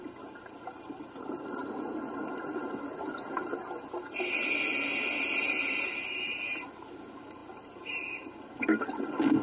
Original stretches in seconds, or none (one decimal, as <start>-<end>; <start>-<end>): 0.0-9.4

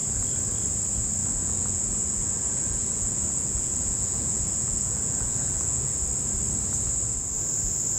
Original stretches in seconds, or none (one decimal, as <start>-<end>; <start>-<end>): 0.0-1.2; 6.0-8.0

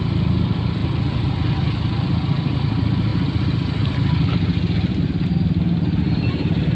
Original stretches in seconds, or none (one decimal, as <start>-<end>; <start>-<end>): 0.0-6.8

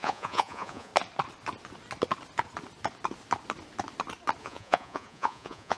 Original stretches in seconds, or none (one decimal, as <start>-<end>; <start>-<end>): 0.9-4.4

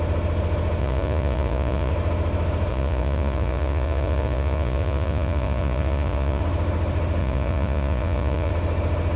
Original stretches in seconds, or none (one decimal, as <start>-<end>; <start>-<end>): 0.0-0.8; 1.9-2.7; 6.4-7.2; 8.5-9.2